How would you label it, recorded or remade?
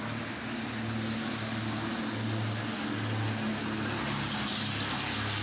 recorded